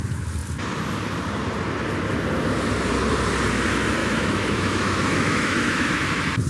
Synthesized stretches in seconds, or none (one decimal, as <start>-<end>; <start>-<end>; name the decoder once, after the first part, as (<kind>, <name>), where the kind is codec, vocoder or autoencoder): 4.0-6.0 (autoencoder, DAC-VAE)